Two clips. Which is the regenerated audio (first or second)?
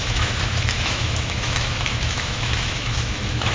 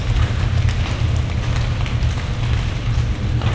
first